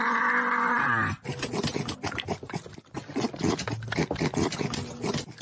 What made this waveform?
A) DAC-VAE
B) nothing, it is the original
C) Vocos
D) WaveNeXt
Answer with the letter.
B